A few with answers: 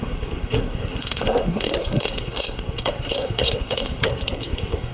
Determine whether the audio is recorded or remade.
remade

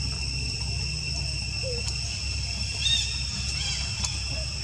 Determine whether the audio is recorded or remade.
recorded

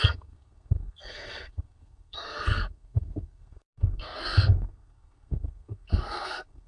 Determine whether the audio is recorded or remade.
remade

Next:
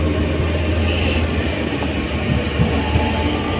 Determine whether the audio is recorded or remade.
recorded